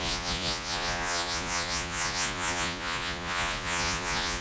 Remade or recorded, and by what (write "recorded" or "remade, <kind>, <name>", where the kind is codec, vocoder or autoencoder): remade, vocoder, Vocos